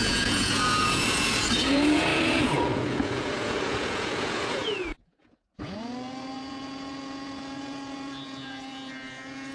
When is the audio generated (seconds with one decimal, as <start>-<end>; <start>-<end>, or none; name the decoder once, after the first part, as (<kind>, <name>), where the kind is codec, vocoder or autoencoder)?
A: 0.0-9.5 (vocoder, Vocos)